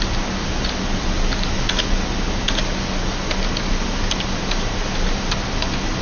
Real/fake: real